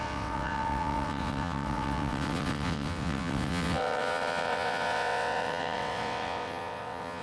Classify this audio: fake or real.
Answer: fake